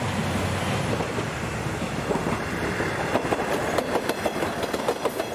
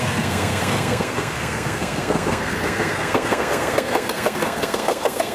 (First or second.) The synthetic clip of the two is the second